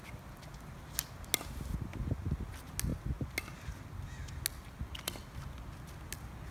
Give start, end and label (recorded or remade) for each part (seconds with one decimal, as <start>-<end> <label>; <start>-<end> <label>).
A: 0.0-6.5 recorded

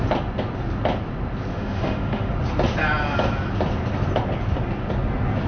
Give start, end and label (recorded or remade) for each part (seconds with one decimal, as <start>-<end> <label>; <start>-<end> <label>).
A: 0.0-1.5 recorded; 1.5-2.3 remade; 2.3-5.5 recorded

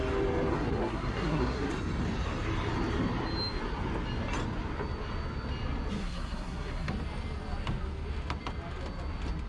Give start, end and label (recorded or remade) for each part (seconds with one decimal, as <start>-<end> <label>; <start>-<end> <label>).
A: 0.0-0.5 recorded; 0.5-1.7 remade; 1.7-6.0 recorded; 6.0-6.9 remade; 6.9-9.5 recorded

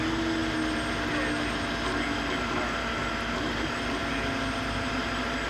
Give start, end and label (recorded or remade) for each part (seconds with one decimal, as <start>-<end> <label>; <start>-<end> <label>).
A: 0.0-5.5 recorded

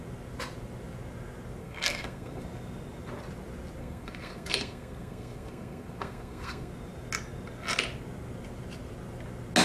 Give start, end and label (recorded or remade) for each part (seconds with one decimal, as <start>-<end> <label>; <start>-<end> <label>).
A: 0.0-1.6 recorded; 1.6-2.4 remade; 2.4-3.8 recorded; 3.8-6.7 remade; 6.7-9.6 recorded

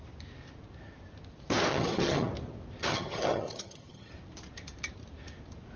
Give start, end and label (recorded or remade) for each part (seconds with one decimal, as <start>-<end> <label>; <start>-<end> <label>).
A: 0.0-1.7 recorded; 1.7-2.3 remade; 2.3-2.9 recorded; 2.9-4.1 remade; 4.1-5.8 recorded

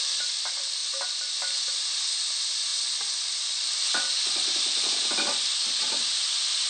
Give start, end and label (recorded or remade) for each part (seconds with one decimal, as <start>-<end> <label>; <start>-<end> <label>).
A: 0.0-0.8 remade; 0.8-1.7 recorded; 1.7-6.7 remade